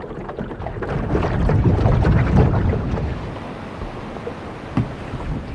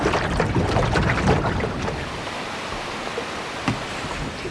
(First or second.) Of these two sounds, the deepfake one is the second